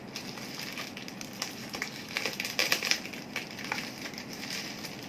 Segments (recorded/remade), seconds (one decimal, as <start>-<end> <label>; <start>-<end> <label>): 0.0-1.6 recorded; 1.6-2.2 remade; 2.2-5.1 recorded